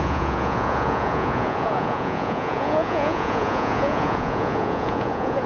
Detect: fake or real fake